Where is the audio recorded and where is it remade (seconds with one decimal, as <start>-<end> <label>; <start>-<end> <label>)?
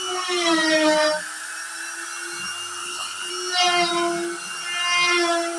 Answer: 0.0-2.8 recorded; 2.8-3.3 remade; 3.3-5.6 recorded